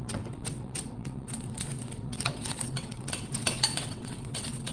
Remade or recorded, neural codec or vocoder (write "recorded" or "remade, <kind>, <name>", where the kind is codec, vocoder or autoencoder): remade, vocoder, WaveNeXt